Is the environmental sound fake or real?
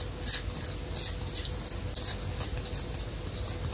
real